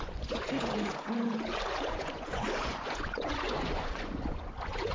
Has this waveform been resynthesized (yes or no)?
yes